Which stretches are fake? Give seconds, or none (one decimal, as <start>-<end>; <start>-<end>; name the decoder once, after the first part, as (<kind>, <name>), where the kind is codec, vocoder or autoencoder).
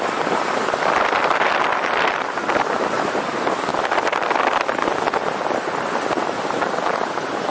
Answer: 0.0-3.7 (vocoder, BigVGAN v2); 5.5-7.5